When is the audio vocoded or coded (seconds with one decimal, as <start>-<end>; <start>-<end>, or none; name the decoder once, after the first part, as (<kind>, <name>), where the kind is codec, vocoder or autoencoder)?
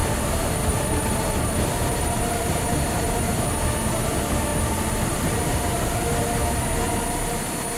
0.0-3.2 (vocoder, BigVGAN v2); 4.5-6.0